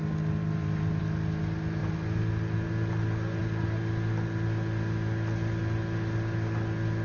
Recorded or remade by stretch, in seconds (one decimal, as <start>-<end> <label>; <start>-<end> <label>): 0.0-0.4 recorded; 0.4-1.0 remade; 1.0-7.0 recorded